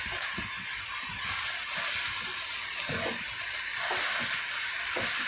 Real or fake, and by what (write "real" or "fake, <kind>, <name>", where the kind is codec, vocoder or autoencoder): real